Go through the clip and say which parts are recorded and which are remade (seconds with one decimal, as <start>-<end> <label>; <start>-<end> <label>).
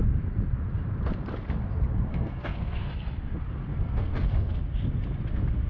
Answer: 0.0-2.1 recorded; 2.1-2.9 remade; 2.9-3.7 recorded; 3.7-4.6 remade; 4.6-5.7 recorded